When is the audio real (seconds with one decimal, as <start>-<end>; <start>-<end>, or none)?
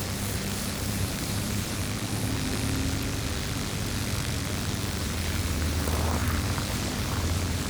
1.8-5.0